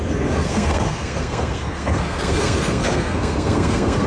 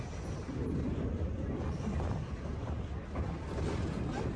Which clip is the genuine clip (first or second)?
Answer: second